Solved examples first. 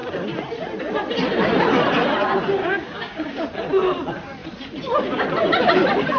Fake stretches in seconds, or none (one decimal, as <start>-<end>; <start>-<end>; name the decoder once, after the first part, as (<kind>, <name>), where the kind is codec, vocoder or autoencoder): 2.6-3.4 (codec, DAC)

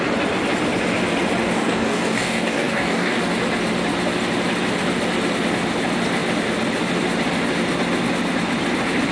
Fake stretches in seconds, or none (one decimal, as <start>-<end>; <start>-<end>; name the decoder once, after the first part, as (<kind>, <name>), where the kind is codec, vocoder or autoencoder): 1.4-3.2 (codec, DAC)

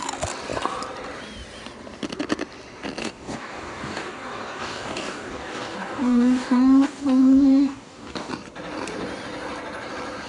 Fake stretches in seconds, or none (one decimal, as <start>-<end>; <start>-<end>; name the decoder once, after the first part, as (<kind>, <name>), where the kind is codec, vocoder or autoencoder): 3.0-8.3 (codec, DAC)

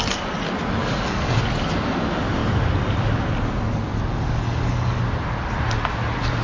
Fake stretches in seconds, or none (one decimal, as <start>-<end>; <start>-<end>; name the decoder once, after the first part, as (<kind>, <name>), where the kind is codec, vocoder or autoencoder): 0.8-1.4 (codec, DAC); 4.1-5.0

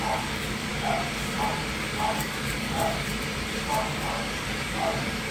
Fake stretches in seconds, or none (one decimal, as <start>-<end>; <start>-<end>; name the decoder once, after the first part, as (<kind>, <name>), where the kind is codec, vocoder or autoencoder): 0.0-0.7 (codec, DAC); 1.8-3.1; 3.7-5.3

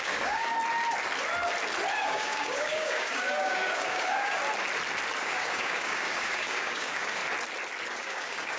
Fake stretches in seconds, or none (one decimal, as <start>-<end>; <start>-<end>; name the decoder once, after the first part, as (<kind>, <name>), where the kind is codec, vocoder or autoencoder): 0.0-0.5 (codec, DAC); 1.9-4.4; 5.2-7.2; 8.0-8.6

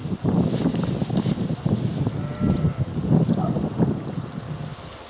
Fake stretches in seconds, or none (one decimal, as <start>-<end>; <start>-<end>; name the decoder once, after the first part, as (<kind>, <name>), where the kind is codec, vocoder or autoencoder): none